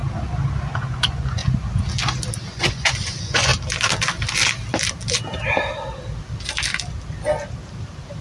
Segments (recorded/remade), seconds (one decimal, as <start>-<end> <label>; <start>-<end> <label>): 0.0-0.8 recorded; 0.8-1.4 remade; 1.4-2.5 recorded; 2.5-3.5 remade; 3.5-8.2 recorded